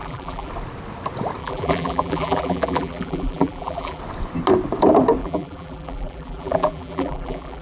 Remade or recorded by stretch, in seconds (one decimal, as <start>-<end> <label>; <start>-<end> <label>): 0.0-0.5 remade; 0.5-1.4 recorded; 1.4-4.0 remade; 4.0-5.2 recorded; 5.2-7.6 remade